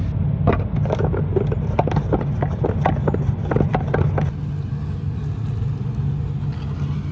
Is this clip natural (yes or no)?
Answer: yes